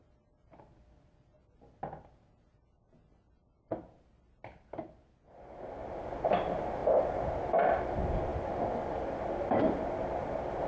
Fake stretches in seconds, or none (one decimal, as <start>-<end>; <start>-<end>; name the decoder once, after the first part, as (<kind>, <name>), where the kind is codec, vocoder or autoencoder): 6.8-7.8 (vocoder, BigVGAN v2)